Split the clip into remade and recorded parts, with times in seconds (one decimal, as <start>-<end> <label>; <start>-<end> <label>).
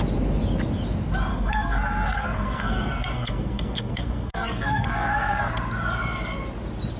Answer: 0.0-1.3 recorded; 1.3-5.5 remade; 5.5-7.0 recorded